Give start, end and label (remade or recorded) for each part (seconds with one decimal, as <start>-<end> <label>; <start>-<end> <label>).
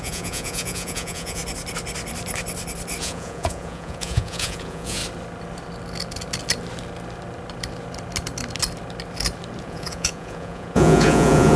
0.0-1.4 remade; 1.4-3.0 recorded; 3.0-5.0 remade; 5.0-9.6 recorded; 9.6-11.6 remade